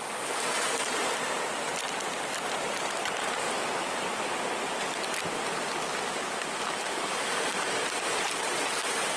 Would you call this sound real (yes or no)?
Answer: yes